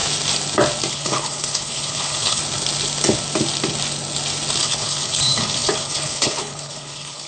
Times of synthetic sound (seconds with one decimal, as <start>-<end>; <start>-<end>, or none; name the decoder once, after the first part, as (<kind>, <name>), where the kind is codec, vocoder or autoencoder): 0.9-2.4 (codec, HILCodec); 4.6-7.3